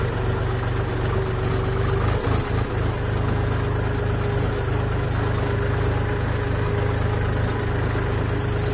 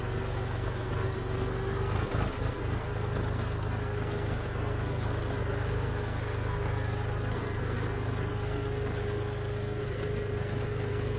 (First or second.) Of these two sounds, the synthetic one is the second